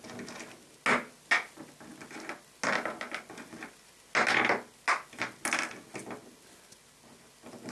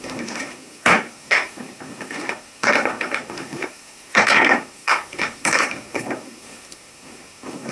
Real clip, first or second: first